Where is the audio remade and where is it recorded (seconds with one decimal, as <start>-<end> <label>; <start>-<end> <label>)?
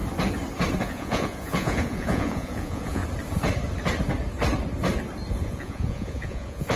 0.0-0.8 recorded; 0.8-3.0 remade; 3.0-5.3 recorded; 5.3-6.8 remade